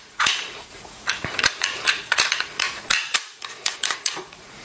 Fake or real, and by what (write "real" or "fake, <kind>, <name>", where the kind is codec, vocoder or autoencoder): fake, vocoder, Vocos